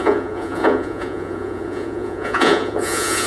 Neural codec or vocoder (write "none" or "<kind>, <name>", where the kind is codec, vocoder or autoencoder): vocoder, Vocos